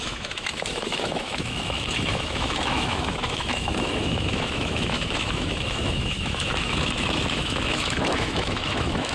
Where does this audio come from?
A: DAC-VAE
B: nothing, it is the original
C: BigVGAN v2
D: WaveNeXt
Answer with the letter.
A